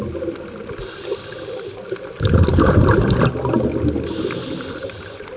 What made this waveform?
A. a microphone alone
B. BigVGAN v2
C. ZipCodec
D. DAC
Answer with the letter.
A